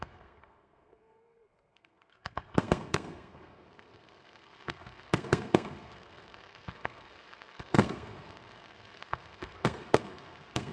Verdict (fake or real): fake